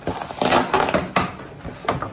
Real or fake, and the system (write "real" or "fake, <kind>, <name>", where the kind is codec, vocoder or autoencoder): real